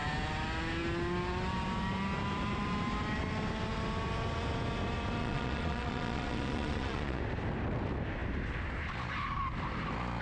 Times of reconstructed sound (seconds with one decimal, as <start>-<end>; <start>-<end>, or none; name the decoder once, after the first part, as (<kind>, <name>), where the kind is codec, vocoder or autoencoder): 5.2-7.2 (vocoder, Vocos)